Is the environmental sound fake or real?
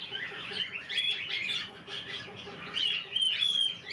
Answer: fake